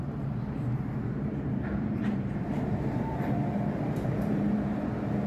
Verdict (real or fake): fake